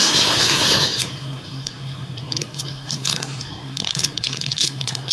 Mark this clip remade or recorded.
remade